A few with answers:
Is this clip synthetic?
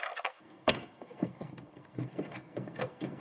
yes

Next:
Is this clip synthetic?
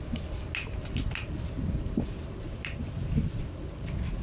no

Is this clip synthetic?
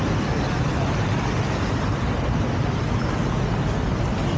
no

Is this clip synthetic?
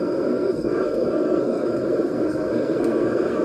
yes